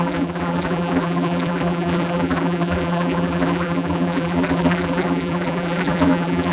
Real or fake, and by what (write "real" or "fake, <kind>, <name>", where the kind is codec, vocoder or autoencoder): fake, vocoder, BigVGAN v2